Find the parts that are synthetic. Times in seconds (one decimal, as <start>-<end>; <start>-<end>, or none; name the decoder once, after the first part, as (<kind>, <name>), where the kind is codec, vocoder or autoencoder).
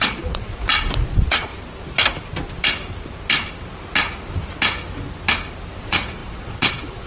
0.0-0.5 (vocoder, Vocos); 1.1-1.5; 5.8-7.1